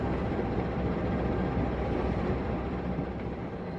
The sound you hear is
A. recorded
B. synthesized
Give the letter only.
B